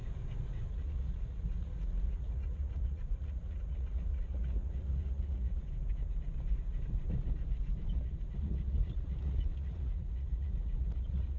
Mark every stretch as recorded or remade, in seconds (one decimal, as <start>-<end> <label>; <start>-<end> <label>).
0.0-0.7 recorded; 0.7-5.6 remade; 5.6-8.4 recorded; 8.4-11.4 remade